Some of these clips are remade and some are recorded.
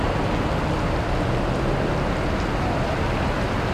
recorded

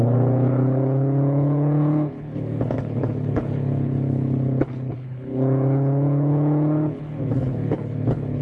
remade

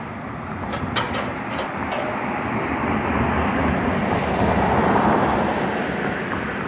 recorded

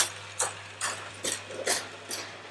recorded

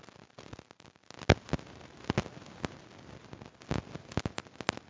recorded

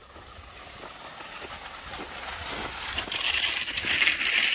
recorded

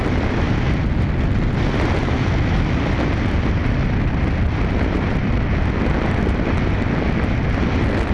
recorded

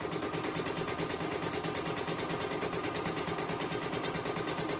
recorded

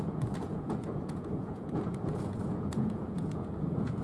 remade